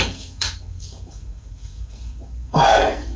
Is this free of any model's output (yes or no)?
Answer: no